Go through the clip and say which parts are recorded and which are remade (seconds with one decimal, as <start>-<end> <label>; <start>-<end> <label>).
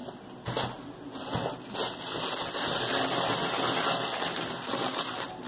0.0-5.5 recorded